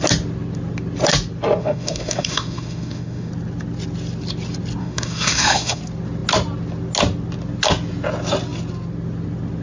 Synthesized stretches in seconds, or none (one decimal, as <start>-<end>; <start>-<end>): 1.6-3.3; 4.8-5.8